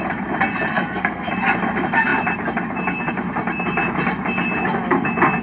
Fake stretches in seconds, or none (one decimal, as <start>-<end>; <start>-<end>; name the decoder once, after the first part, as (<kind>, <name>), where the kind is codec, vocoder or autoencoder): 0.7-1.3 (codec, SNAC)